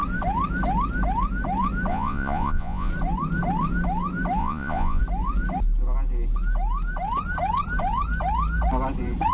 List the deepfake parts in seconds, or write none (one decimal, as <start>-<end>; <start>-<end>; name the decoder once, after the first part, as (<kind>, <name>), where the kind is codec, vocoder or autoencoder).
1.9-2.9 (vocoder, Vocos); 4.4-5.0